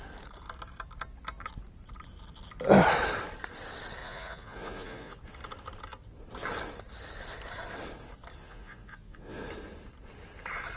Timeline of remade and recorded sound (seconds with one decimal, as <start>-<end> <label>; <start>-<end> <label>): 0.0-4.0 recorded; 4.0-5.2 remade; 5.2-8.4 recorded; 8.4-9.4 remade; 9.4-10.8 recorded